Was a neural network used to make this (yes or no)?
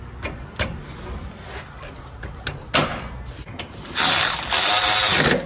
no